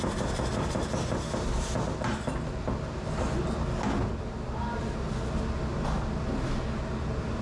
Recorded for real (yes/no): yes